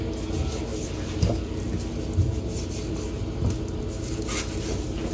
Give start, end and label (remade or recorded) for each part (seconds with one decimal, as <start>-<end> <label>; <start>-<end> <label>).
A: 0.0-5.1 recorded

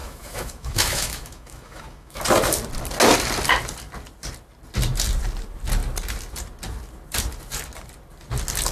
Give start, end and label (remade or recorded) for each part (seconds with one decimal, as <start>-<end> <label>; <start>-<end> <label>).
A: 0.0-2.2 remade; 2.2-8.7 recorded

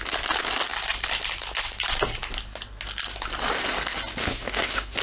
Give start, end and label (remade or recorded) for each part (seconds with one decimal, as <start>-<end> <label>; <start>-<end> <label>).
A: 0.0-4.2 recorded; 4.2-5.0 remade